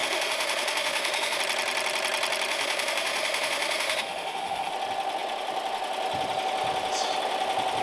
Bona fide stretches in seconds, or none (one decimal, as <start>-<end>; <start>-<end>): 1.4-2.5; 4.7-7.8